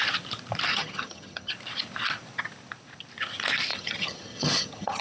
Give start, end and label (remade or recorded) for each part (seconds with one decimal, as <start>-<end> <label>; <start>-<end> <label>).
0.0-0.7 recorded; 0.7-1.5 remade; 1.5-3.7 recorded; 3.7-5.0 remade